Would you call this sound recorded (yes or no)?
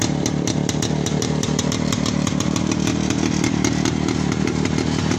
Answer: no